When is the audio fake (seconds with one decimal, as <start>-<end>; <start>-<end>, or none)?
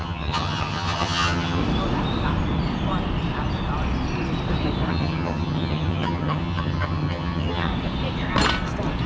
0.0-1.6; 4.9-7.7